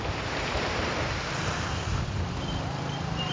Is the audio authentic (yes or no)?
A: no